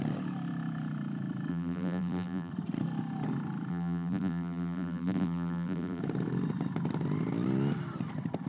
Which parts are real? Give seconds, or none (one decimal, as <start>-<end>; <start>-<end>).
0.0-1.5; 2.5-3.7; 6.0-8.5